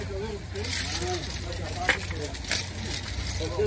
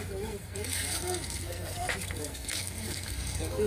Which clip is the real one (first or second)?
first